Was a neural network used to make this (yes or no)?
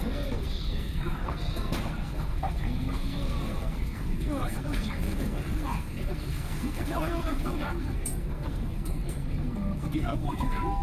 yes